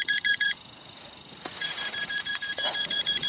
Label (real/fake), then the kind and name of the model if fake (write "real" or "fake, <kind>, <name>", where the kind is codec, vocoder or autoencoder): fake, vocoder, Vocos